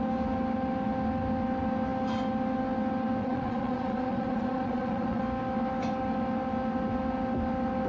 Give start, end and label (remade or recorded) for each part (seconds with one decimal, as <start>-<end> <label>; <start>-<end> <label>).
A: 0.0-3.2 recorded; 3.2-5.2 remade; 5.2-7.9 recorded